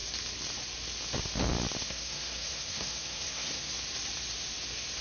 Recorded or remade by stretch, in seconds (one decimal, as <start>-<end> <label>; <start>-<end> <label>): 0.0-1.8 recorded; 1.8-3.7 remade; 3.7-5.0 recorded

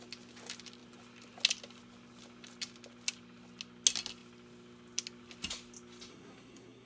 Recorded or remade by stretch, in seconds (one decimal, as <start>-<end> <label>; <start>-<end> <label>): 0.0-6.1 recorded; 6.1-6.9 remade

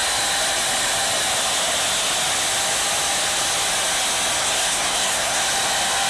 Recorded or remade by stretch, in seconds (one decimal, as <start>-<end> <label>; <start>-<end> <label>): 0.0-4.4 recorded; 4.4-5.4 remade; 5.4-6.1 recorded

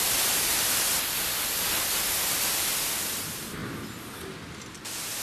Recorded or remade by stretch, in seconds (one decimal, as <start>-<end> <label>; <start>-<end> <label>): 0.0-5.2 recorded

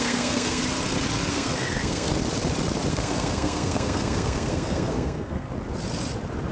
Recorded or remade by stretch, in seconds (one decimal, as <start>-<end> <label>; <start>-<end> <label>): 0.0-0.6 remade; 0.6-1.3 recorded; 1.3-2.1 remade; 2.1-2.9 recorded; 2.9-5.5 remade; 5.5-6.5 recorded